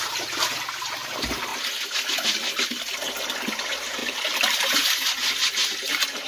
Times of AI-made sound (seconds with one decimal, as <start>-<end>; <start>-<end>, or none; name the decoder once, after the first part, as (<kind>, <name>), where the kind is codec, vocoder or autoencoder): 0.0-1.5 (vocoder, BigVGAN v2); 3.5-6.3